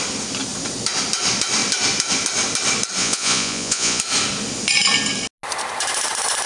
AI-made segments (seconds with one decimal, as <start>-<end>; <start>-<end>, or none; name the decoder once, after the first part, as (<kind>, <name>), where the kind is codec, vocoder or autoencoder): 3.0-4.0 (vocoder, Vocos)